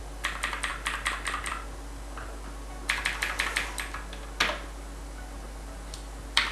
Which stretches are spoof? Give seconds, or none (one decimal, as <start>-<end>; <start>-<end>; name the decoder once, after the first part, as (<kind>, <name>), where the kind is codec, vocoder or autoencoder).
none